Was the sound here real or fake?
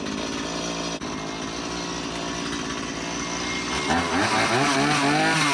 real